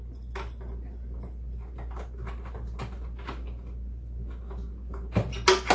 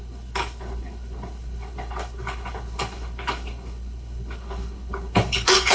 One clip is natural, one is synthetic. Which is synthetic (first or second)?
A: second